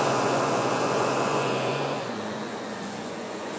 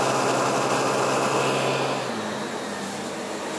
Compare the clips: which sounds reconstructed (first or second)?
first